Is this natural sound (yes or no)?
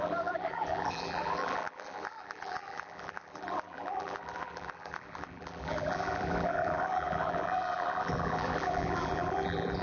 no